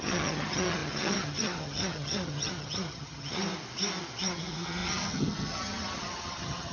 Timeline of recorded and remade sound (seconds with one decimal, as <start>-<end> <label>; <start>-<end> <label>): 0.0-3.4 remade; 3.4-4.2 recorded; 4.2-6.7 remade